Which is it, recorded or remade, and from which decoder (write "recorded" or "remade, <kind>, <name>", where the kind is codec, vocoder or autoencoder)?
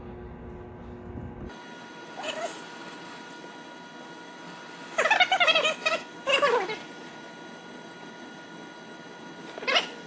recorded